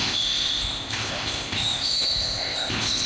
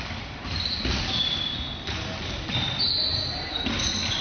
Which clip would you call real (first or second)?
second